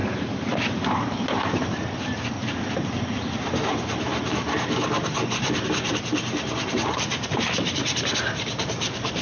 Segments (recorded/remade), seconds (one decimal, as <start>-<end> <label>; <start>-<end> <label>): 0.0-9.2 remade